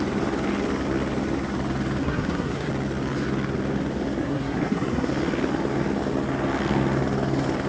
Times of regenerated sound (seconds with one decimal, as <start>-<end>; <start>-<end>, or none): 2.0-2.7; 4.2-5.1